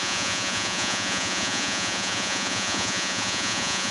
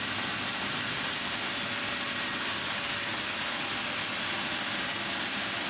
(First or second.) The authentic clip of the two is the second